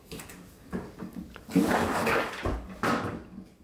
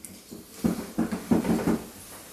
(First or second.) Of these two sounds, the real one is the second